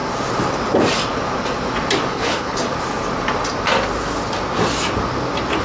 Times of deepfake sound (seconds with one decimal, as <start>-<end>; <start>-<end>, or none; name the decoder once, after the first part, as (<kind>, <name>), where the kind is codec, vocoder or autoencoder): 2.1-2.6 (codec, HILCodec)